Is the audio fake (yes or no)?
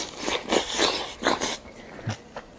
no